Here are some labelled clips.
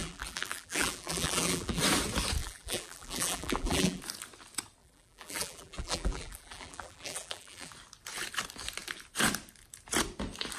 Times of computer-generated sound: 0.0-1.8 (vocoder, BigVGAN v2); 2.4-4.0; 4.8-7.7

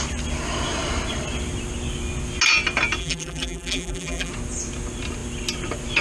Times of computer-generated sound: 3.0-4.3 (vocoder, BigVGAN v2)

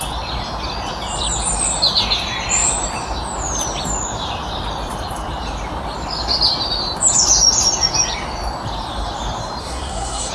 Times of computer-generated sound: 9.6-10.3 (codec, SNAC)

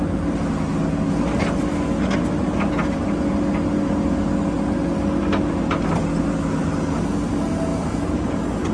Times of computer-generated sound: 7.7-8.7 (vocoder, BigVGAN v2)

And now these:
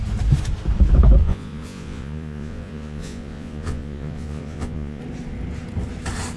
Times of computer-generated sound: 1.2-5.0 (vocoder, Vocos)

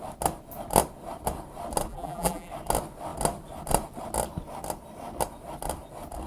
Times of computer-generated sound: 1.9-2.5 (vocoder, BigVGAN v2)